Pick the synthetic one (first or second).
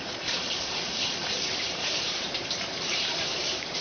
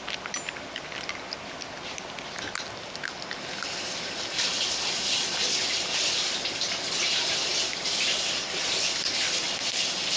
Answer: first